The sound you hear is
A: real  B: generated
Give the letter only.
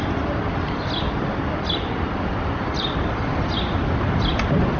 B